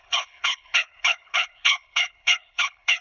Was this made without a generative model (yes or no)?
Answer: no